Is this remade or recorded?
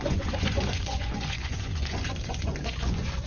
remade